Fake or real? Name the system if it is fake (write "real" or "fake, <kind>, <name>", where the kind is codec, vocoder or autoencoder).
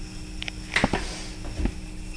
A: real